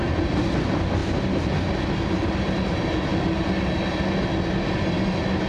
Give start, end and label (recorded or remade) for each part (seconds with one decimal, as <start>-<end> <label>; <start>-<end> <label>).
0.0-5.5 recorded